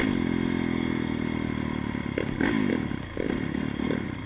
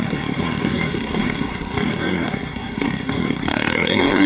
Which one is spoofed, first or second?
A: second